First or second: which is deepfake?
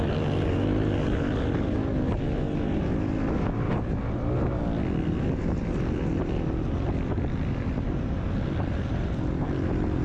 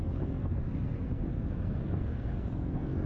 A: second